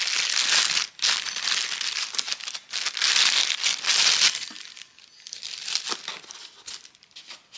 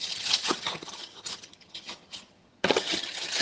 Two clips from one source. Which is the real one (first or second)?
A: first